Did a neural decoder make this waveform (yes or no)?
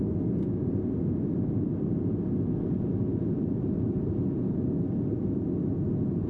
no